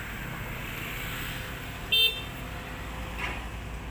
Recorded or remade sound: recorded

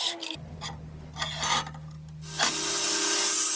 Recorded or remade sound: recorded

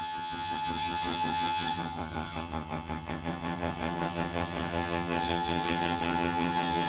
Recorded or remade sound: remade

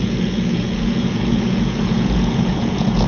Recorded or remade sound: remade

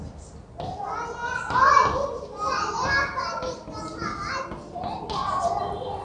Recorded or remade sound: recorded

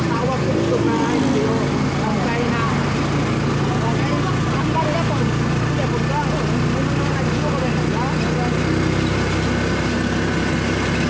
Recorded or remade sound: recorded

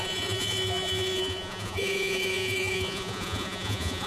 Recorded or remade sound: remade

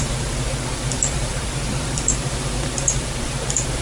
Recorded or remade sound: remade